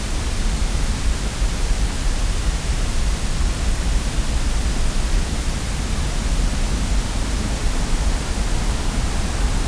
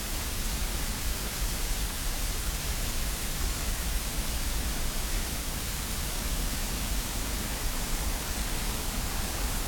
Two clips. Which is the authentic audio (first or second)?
first